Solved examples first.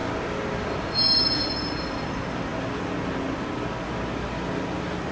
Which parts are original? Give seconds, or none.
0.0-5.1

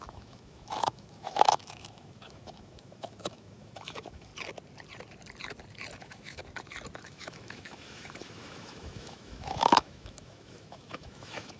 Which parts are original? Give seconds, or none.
4.3-6.0; 6.4-7.0